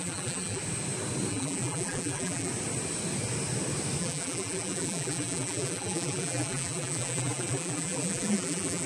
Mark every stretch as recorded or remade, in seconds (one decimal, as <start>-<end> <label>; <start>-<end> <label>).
0.0-0.6 remade; 0.6-1.3 recorded; 1.3-2.5 remade; 2.5-4.0 recorded; 4.0-8.9 remade